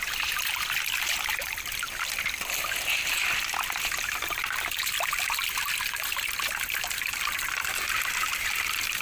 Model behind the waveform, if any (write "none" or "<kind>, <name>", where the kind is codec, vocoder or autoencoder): none